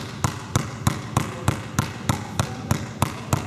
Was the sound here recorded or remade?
recorded